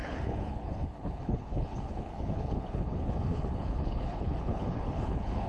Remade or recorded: remade